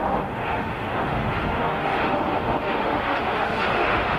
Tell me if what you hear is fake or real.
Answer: fake